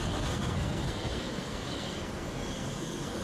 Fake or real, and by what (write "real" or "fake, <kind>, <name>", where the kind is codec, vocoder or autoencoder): fake, codec, SNAC